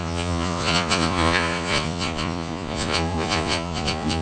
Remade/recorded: remade